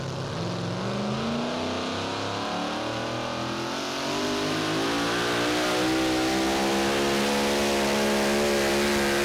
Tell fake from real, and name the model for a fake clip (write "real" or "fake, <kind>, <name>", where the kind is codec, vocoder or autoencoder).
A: real